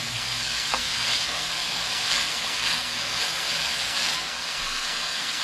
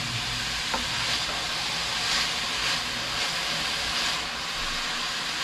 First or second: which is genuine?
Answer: second